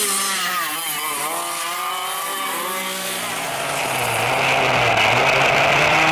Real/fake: real